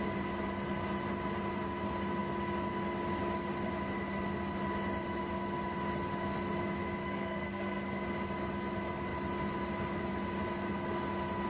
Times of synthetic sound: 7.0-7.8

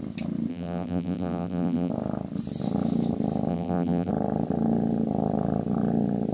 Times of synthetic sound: 0.5-1.9; 3.5-4.1

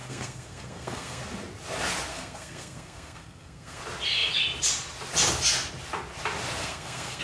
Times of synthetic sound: 0.0-1.2; 2.1-3.8; 6.6-7.2

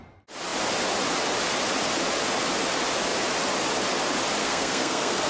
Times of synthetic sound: 4.4-5.3

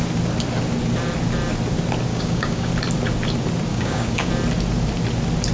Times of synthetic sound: 2.1-2.7; 3.7-4.3

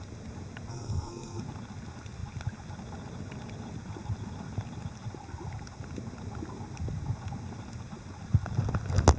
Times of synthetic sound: 0.7-1.4

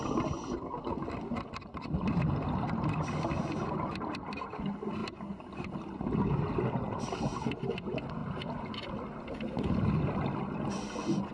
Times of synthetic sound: none

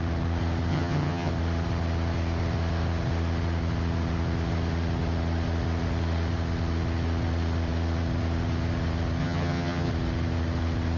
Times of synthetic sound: 0.7-1.3; 9.2-9.9